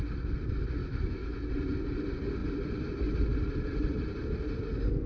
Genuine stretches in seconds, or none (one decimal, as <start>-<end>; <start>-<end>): 0.0-0.8; 1.5-5.1